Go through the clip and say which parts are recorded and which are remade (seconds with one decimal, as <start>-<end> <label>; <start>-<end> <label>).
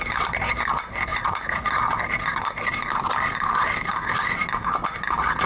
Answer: 0.0-1.1 recorded; 1.1-1.7 remade; 1.7-5.5 recorded